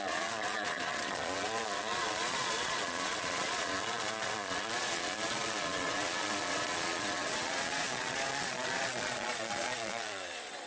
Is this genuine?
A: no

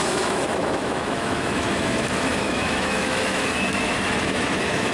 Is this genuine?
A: no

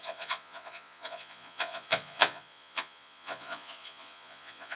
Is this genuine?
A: no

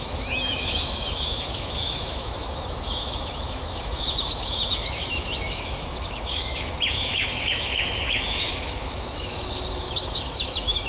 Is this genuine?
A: no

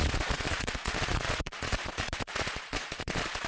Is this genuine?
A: no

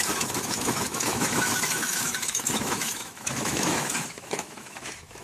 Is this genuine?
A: no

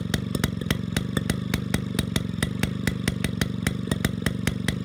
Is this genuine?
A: yes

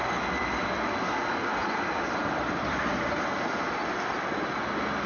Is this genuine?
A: yes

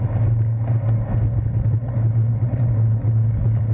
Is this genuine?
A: yes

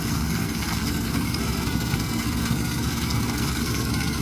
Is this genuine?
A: no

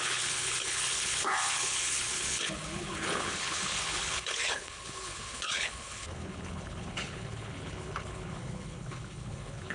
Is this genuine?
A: no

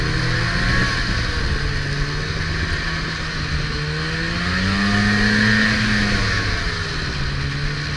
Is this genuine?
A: yes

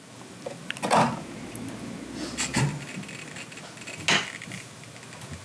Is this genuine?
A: yes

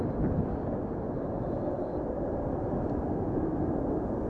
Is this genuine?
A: yes